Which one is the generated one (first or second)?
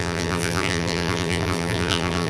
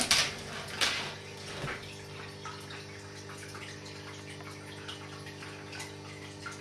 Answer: first